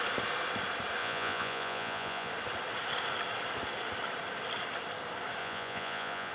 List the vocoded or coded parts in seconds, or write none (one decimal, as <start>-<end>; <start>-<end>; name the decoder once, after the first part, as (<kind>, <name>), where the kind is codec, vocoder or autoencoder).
1.0-2.3 (vocoder, Vocos); 5.4-6.3